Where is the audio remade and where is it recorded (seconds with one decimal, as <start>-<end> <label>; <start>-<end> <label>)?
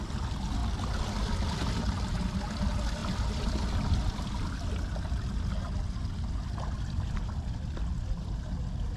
0.0-9.0 recorded